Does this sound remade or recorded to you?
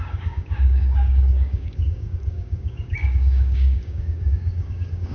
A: remade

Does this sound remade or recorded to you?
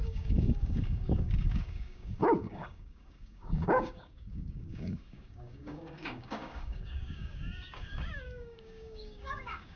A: remade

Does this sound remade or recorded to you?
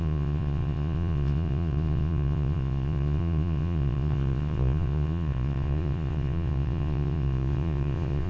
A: remade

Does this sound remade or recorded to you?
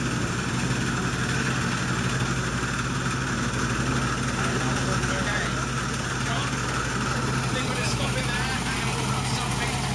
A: recorded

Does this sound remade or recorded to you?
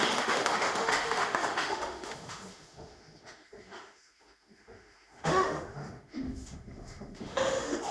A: remade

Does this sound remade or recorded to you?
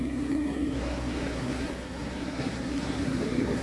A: remade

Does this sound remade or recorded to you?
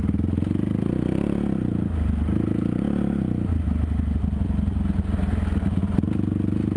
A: recorded